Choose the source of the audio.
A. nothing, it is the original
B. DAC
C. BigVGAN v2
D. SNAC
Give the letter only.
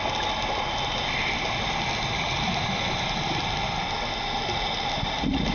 A